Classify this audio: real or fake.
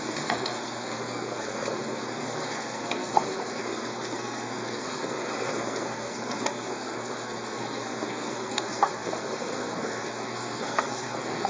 fake